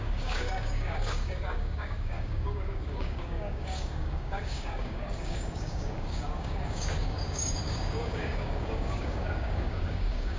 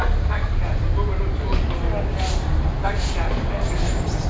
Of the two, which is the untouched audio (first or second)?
second